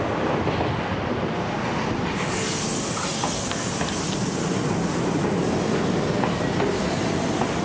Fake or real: real